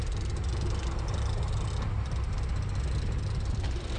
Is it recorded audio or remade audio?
recorded